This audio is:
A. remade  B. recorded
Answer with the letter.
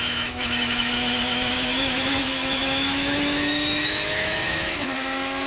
A